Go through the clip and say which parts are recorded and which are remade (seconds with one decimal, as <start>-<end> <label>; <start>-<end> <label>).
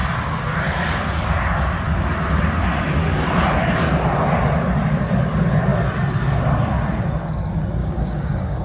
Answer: 0.0-7.8 recorded; 7.8-8.6 remade